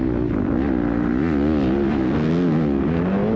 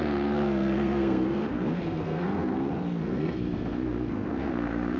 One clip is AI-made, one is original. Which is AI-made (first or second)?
second